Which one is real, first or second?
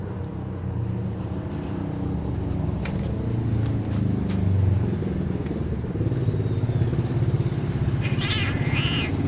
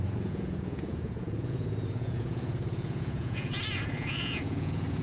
first